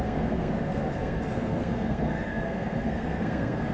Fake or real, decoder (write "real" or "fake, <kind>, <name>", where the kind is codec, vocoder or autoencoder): fake, codec, SNAC